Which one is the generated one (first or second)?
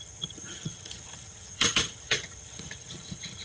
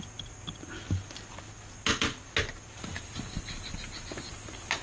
first